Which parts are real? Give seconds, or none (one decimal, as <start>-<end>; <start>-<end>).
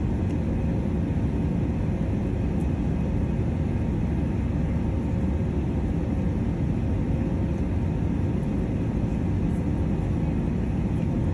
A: 0.0-11.3